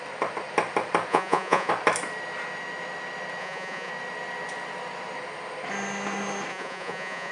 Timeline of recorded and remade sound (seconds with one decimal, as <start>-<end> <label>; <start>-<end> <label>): 0.0-1.1 recorded; 1.1-1.7 remade; 1.7-3.4 recorded; 3.4-3.9 remade; 3.9-6.5 recorded; 6.5-7.3 remade